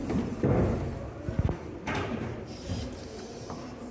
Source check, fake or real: real